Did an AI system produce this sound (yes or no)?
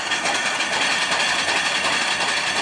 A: no